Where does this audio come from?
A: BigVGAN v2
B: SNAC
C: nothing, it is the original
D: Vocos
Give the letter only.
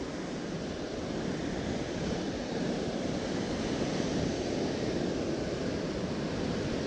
A